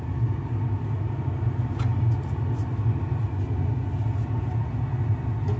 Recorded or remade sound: recorded